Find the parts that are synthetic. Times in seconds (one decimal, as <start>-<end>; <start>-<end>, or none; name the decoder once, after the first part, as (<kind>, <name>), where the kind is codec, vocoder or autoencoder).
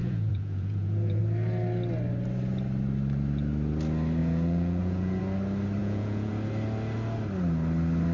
0.0-1.2 (vocoder, Vocos); 4.2-5.2; 5.8-6.3